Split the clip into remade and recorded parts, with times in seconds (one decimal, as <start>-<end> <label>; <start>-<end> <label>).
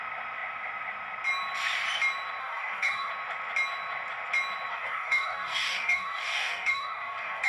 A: 0.0-2.4 recorded; 2.4-3.1 remade; 3.1-4.7 recorded; 4.7-7.5 remade